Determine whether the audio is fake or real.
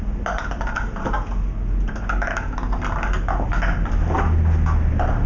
real